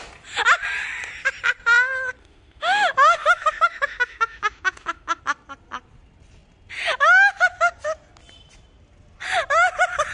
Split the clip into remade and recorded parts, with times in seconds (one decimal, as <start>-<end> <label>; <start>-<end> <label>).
0.0-2.2 recorded; 2.2-5.2 remade; 5.2-10.1 recorded